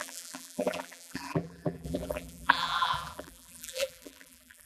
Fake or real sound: fake